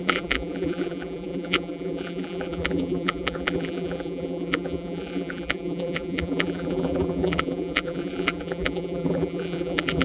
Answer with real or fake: fake